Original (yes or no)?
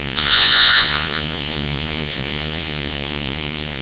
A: no